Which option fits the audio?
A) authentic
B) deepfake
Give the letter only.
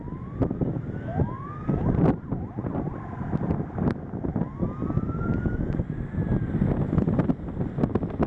A